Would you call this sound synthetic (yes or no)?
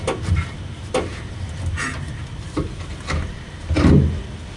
no